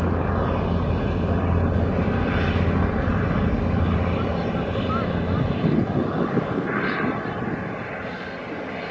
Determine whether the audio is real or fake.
real